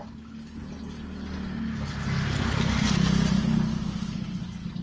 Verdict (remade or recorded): recorded